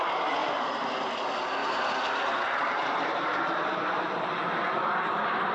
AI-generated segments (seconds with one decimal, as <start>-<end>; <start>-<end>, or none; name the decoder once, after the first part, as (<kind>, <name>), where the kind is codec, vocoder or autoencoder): 0.4-1.2 (vocoder, BigVGAN v2); 1.6-4.9